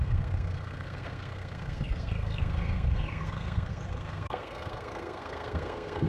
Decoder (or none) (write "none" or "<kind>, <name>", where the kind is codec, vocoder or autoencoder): codec, SNAC